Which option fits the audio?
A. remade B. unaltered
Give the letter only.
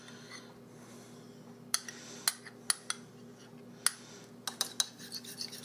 B